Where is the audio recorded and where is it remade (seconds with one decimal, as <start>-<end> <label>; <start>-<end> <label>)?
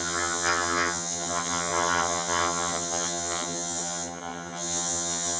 0.0-5.4 remade